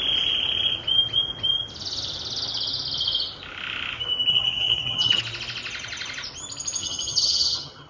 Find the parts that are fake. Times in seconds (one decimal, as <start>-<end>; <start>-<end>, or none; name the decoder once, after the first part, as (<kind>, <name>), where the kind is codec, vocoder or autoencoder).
4.3-5.2 (vocoder, HiFi-GAN); 6.8-7.9